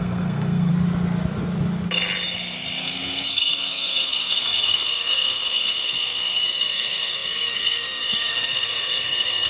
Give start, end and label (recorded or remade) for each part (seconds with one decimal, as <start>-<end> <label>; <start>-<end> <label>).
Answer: 0.0-0.7 remade; 0.7-2.8 recorded; 2.8-9.5 remade